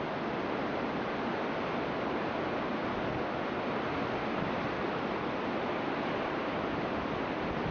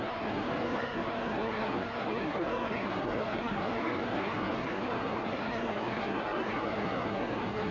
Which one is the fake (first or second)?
second